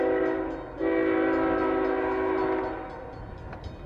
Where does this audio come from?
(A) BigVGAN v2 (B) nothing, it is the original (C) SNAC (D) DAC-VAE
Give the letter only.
B